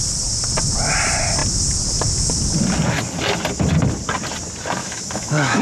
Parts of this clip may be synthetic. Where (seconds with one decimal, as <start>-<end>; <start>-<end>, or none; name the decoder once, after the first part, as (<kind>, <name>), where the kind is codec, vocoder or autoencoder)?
4.8-5.6 (autoencoder, DAC-VAE)